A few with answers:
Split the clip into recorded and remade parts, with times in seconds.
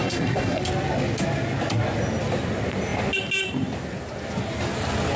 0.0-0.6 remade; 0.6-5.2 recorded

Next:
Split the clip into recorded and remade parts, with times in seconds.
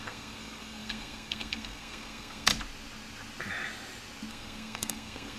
0.0-2.5 remade; 2.5-4.3 recorded; 4.3-5.4 remade